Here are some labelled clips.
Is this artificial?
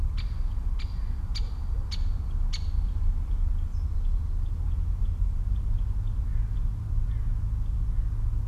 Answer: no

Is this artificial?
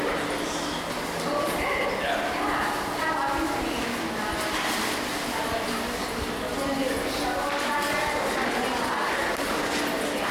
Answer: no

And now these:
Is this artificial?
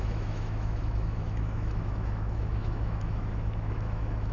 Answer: yes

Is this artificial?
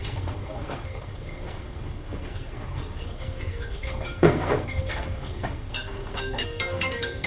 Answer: yes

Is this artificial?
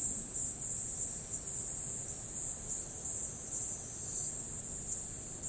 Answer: no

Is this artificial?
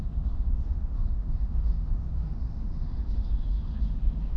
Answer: yes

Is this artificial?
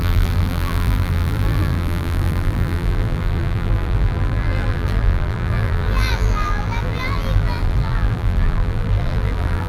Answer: yes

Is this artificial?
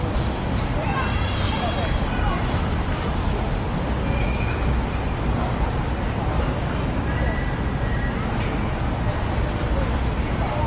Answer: no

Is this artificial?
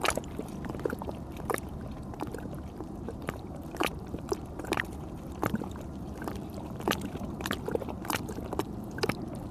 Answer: yes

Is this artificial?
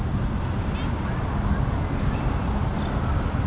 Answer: no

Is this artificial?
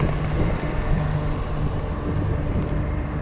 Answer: no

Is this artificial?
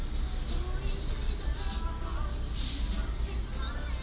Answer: no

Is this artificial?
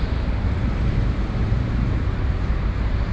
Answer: yes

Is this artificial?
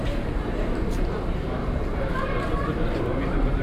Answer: yes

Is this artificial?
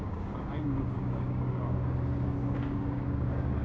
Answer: yes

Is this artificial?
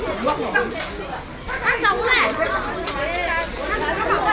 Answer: no